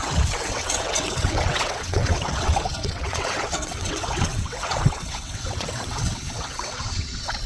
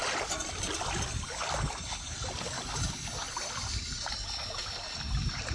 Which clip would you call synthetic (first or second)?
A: first